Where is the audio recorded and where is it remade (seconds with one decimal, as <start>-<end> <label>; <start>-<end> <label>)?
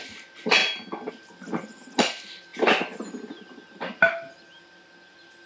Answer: 0.0-5.5 recorded